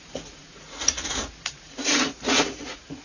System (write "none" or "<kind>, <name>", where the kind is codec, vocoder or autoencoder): vocoder, Vocos